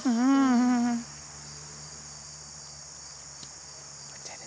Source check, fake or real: real